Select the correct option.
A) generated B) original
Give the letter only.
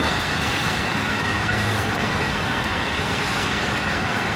A